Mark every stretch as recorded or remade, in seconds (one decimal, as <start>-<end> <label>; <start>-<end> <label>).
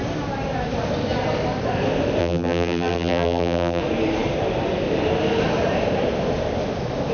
0.0-2.2 recorded; 2.2-3.8 remade; 3.8-7.1 recorded